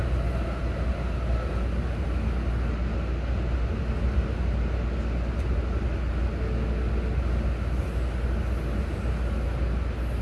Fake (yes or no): no